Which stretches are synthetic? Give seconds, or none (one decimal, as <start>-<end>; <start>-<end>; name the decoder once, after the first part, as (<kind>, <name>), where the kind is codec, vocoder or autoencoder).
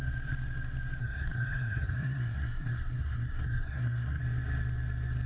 1.0-4.2 (codec, SNAC)